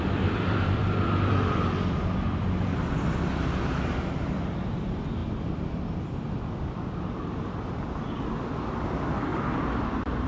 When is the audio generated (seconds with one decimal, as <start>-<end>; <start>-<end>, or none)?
0.0-10.3